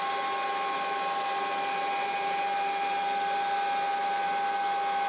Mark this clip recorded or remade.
recorded